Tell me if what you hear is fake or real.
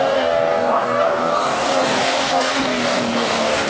fake